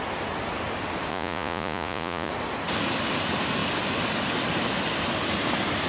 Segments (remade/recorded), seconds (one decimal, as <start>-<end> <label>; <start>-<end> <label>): 0.0-1.1 recorded; 1.1-2.3 remade; 2.3-5.9 recorded